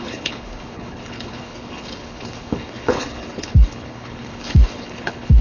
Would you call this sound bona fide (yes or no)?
no